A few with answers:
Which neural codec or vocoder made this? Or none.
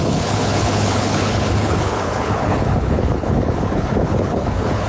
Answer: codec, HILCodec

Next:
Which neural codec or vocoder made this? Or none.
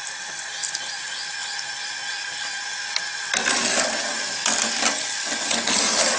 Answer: none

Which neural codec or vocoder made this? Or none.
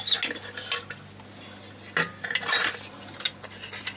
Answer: none